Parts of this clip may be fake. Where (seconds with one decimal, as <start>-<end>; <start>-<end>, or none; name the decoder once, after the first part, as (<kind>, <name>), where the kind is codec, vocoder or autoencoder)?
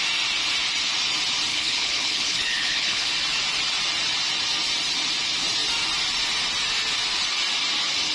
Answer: 1.5-3.1 (codec, HILCodec)